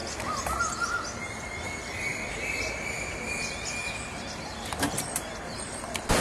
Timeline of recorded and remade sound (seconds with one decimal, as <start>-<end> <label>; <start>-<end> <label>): 0.0-0.6 remade; 0.6-2.1 recorded; 2.1-5.8 remade; 5.8-6.2 recorded